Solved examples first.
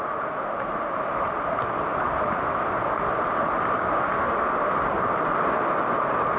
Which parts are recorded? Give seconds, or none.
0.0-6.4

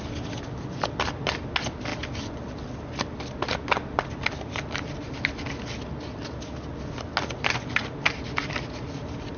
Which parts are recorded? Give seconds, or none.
0.0-9.4

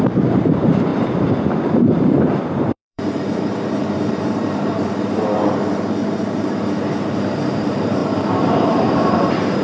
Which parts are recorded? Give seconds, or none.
0.9-1.6

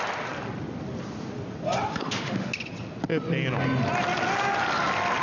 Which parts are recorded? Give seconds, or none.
0.0-1.9; 2.5-5.2

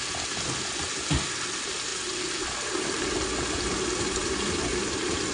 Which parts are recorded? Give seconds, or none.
0.0-5.3

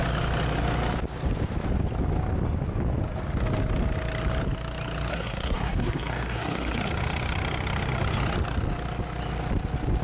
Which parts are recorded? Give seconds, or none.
0.0-5.1; 6.9-10.0

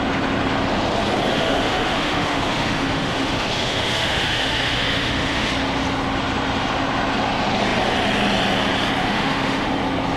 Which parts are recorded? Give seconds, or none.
0.0-1.3; 5.5-9.0; 9.7-10.2

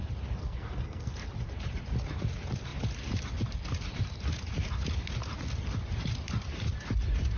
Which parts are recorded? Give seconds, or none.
0.0-0.4; 1.1-7.4